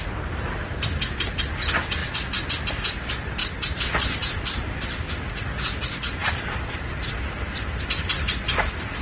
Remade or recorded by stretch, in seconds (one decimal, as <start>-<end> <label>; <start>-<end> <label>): 0.0-9.0 recorded